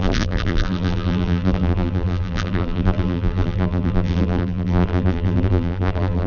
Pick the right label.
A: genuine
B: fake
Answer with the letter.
B